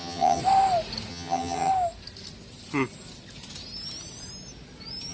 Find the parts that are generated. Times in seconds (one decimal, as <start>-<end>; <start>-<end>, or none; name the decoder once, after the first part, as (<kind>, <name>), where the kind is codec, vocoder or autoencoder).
0.0-0.4 (vocoder, HiFi-GAN); 1.1-1.7